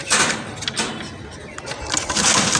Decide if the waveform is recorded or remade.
recorded